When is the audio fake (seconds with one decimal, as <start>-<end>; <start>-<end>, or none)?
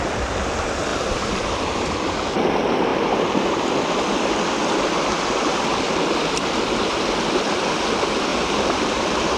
0.9-1.6; 2.9-3.7; 8.3-9.0